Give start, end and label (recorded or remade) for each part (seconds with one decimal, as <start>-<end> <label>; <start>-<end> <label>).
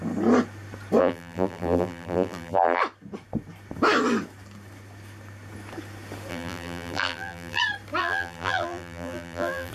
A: 0.0-1.0 recorded; 1.0-2.8 remade; 2.8-6.3 recorded; 6.3-7.6 remade; 7.6-8.0 recorded; 8.0-9.7 remade